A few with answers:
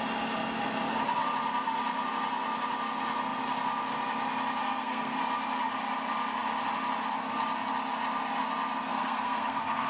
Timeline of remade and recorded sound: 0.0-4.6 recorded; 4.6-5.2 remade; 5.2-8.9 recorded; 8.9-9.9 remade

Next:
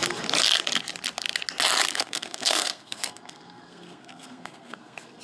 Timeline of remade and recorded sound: 0.0-1.9 recorded; 1.9-5.2 remade

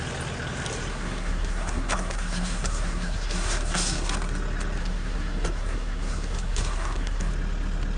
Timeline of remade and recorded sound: 0.0-0.9 recorded; 0.9-4.1 remade; 4.1-4.8 recorded; 4.8-7.3 remade; 7.3-8.0 recorded

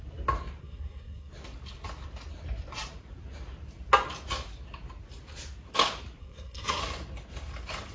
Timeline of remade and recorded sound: 0.0-0.6 recorded; 0.6-1.3 remade; 1.3-6.2 recorded; 6.2-6.8 remade; 6.8-7.9 recorded